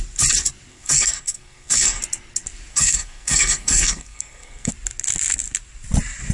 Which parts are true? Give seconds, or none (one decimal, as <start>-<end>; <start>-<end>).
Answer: 0.0-0.7; 2.0-2.7; 4.7-6.3